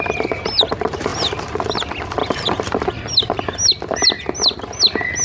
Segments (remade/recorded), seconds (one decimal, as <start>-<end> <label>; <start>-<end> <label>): 0.0-5.2 recorded